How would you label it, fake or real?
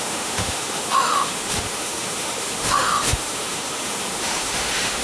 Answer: fake